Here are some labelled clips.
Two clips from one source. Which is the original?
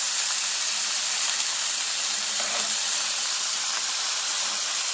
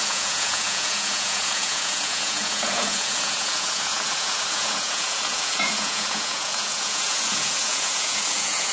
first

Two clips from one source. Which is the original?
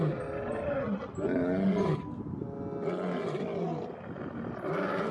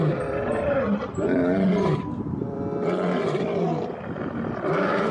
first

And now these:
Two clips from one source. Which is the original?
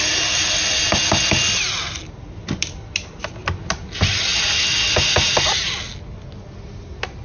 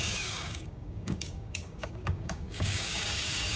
first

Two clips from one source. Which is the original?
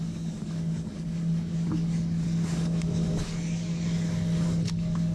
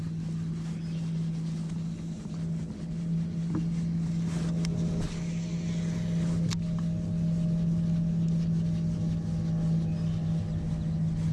second